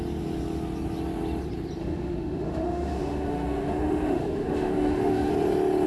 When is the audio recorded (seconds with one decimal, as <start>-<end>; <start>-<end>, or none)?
0.0-1.8; 5.3-5.9